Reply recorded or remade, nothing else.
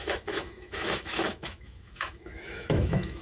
remade